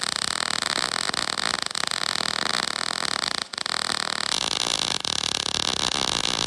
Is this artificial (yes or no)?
no